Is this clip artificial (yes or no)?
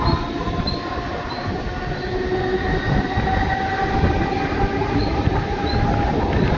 no